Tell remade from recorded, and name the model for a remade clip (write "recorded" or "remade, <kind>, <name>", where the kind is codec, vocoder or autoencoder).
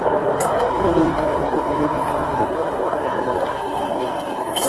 remade, codec, SNAC